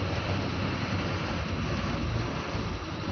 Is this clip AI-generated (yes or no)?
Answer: no